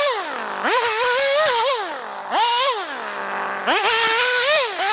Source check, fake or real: real